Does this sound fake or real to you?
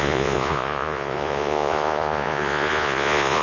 fake